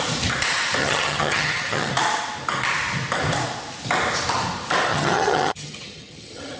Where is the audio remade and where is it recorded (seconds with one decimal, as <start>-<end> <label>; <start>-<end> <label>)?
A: 0.0-0.8 recorded; 0.8-1.9 remade; 1.9-4.9 recorded; 4.9-6.6 remade